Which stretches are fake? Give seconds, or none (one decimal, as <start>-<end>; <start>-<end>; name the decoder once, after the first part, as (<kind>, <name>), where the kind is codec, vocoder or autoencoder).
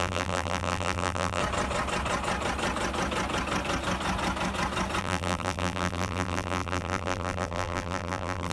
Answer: 0.0-1.4 (vocoder, BigVGAN v2); 5.0-8.5